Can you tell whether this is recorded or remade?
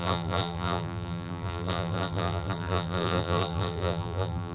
remade